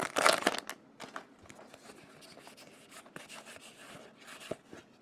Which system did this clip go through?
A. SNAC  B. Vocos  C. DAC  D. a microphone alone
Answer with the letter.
D